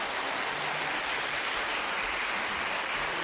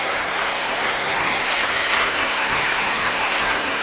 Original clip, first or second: first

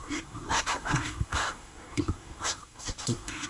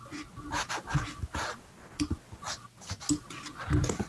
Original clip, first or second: second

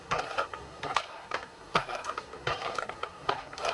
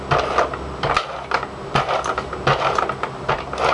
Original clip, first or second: second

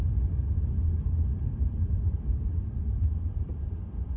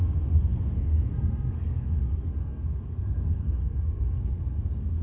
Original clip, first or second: first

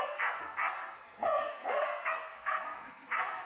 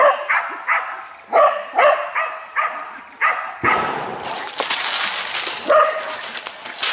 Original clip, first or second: second